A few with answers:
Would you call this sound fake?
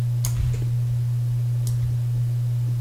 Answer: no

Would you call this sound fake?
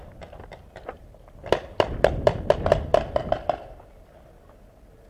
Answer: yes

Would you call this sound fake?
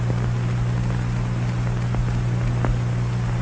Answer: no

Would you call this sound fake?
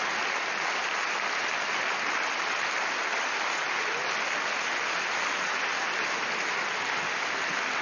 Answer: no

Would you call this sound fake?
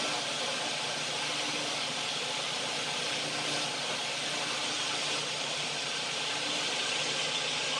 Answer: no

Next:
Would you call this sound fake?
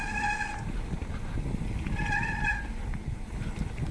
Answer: no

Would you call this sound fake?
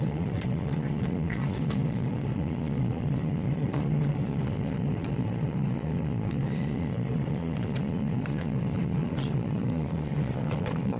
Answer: yes